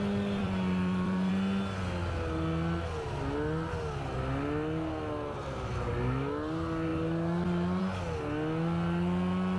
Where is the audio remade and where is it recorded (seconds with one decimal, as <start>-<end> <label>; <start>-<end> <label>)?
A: 0.0-0.4 recorded; 0.4-1.3 remade; 1.3-9.6 recorded